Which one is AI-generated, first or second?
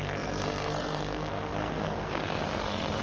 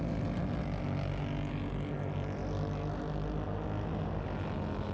first